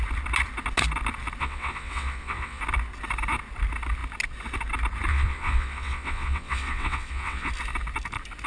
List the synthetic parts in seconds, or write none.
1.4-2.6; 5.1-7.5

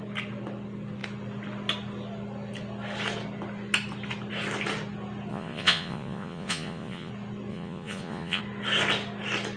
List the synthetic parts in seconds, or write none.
5.3-7.1; 7.5-8.4